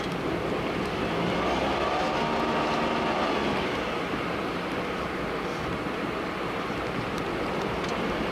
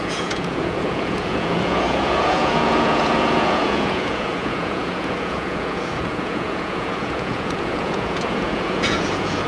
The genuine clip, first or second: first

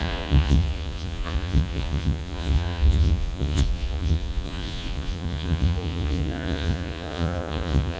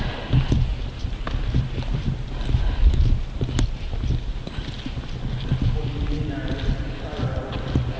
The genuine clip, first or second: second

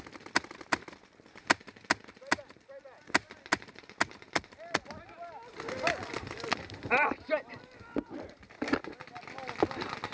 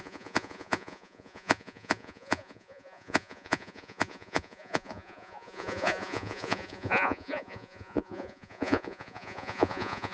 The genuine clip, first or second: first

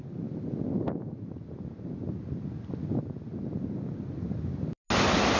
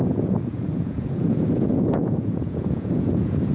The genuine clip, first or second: first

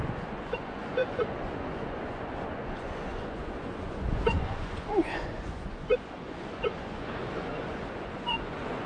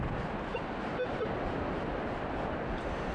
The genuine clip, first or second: second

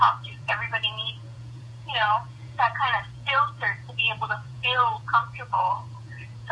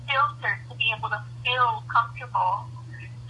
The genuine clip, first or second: second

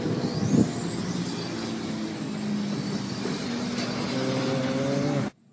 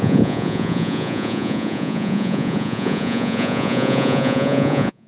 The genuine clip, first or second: first